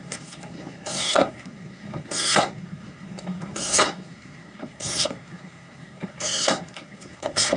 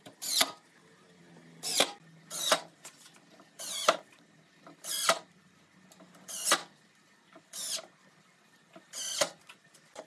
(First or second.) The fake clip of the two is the first